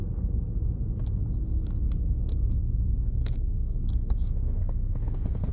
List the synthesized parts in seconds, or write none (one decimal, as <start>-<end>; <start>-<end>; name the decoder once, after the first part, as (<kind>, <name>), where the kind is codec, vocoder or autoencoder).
2.0-5.5 (codec, SNAC)